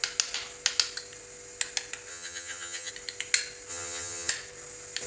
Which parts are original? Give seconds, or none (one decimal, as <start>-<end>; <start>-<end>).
0.0-2.1; 2.9-3.7; 4.3-5.1